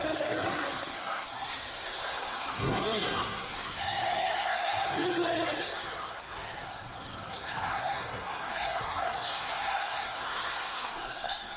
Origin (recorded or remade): remade